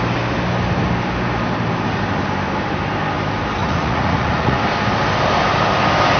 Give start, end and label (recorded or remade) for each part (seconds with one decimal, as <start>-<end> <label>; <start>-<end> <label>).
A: 0.0-3.6 recorded; 3.6-4.6 remade; 4.6-6.2 recorded